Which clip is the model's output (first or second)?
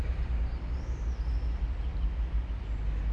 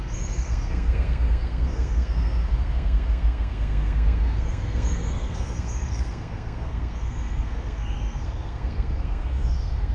second